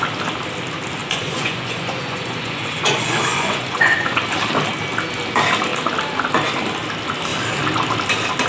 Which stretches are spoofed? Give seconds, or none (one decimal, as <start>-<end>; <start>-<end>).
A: 1.0-4.2